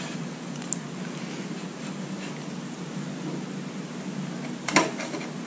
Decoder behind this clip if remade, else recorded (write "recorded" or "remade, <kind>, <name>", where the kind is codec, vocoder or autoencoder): recorded